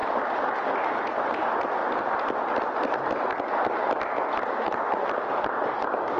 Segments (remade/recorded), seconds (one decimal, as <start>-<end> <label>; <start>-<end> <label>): 0.0-0.9 remade; 0.9-6.2 recorded